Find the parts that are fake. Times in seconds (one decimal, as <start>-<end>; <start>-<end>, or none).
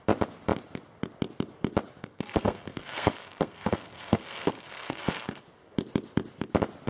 2.0-5.4